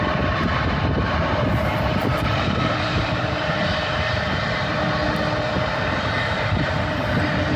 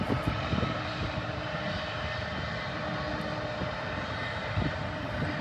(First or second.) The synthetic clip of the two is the first